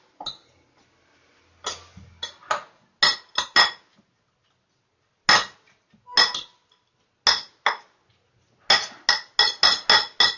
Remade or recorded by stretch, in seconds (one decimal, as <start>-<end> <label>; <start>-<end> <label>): 0.0-10.4 recorded